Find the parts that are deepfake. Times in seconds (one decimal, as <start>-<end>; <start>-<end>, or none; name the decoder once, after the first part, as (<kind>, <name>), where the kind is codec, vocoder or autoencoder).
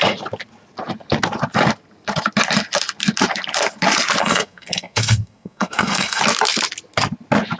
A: 4.2-6.2 (codec, SNAC)